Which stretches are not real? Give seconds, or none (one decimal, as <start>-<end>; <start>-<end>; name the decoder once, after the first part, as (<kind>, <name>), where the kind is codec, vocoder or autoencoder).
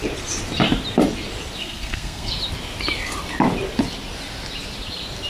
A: 1.6-2.3 (codec, SNAC)